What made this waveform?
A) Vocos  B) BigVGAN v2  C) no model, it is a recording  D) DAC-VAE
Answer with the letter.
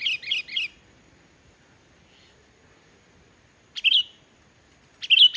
C